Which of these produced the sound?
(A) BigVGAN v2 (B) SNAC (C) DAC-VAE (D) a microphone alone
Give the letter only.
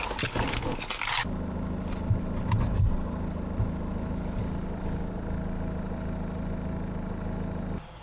D